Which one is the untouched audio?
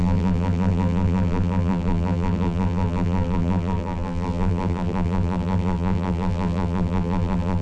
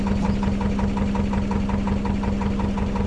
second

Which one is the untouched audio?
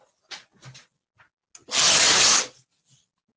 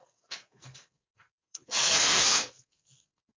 first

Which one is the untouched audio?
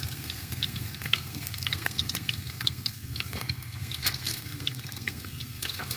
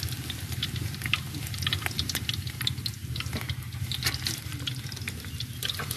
second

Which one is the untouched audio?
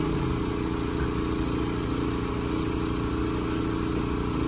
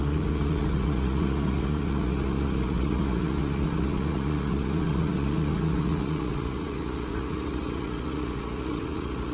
first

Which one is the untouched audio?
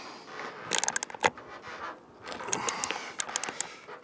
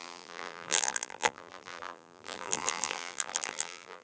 first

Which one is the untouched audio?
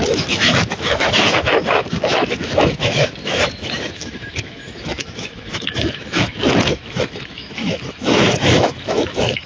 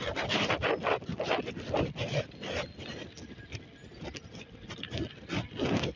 second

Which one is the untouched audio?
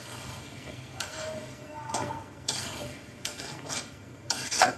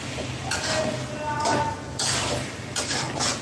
second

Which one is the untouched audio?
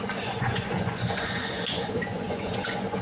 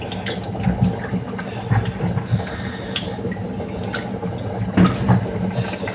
second